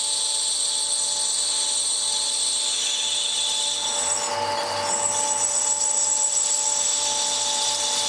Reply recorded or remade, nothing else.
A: recorded